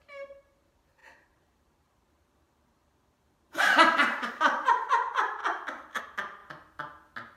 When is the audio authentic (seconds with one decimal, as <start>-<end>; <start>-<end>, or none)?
5.4-6.0; 6.4-7.4